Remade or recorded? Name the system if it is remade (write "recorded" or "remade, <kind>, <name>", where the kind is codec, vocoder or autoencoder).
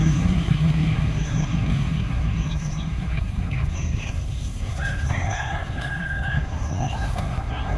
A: remade, codec, SNAC